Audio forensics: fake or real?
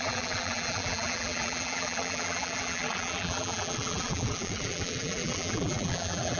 fake